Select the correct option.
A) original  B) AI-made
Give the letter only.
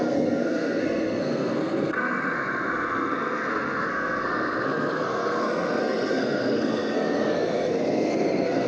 B